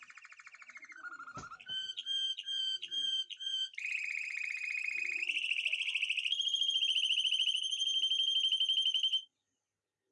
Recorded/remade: recorded